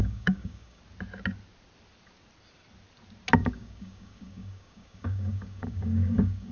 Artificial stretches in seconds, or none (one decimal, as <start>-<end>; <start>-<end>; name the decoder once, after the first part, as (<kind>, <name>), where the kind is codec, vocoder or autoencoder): 0.0-0.8 (codec, DAC); 3.4-6.5